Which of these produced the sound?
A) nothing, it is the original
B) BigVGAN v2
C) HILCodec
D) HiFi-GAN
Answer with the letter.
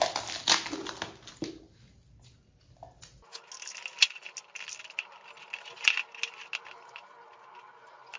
A